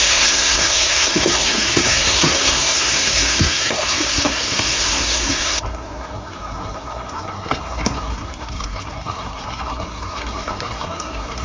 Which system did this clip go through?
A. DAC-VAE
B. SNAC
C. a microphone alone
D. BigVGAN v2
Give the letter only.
B